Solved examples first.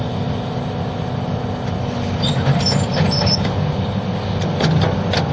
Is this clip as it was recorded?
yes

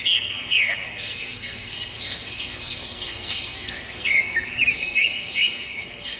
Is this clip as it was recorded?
no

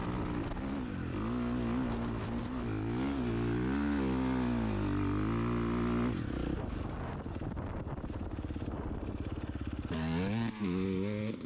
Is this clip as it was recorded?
yes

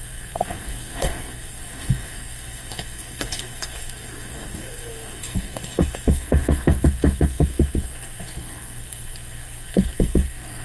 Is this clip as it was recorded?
no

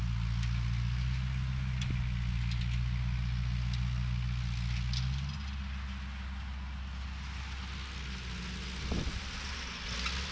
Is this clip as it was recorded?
yes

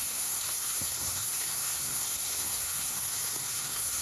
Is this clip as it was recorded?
no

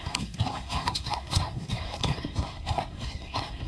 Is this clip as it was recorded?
no